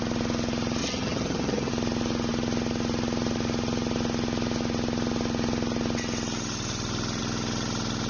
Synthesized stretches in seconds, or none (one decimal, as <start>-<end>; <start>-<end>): 0.8-1.7